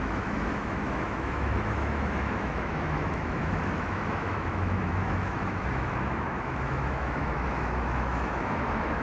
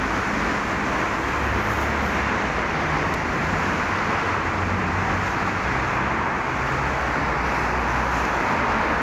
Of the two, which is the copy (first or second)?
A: first